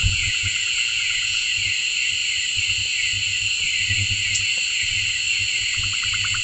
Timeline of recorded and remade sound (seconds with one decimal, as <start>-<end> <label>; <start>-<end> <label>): 0.0-1.5 remade; 1.5-6.4 recorded

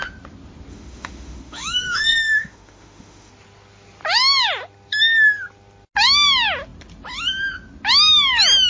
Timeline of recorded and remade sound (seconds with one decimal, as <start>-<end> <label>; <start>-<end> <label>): 0.0-0.7 recorded; 0.7-3.3 remade; 3.3-8.7 recorded

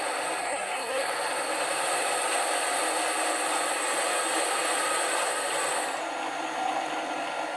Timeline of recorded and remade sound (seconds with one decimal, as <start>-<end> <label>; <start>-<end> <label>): 0.0-0.4 recorded; 0.4-1.1 remade; 1.1-7.6 recorded

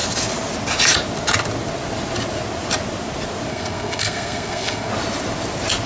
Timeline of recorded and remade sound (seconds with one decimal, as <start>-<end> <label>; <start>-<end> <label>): 0.0-3.5 recorded; 3.5-4.9 remade; 4.9-5.9 recorded

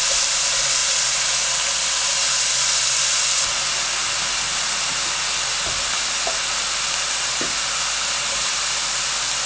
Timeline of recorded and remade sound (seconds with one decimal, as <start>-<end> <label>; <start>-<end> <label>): 0.0-9.5 recorded

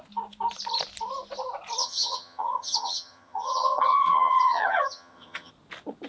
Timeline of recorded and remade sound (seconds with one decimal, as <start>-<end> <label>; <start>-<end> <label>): 0.0-1.8 recorded; 1.8-5.5 remade; 5.5-6.1 recorded